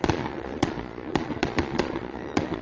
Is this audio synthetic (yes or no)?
yes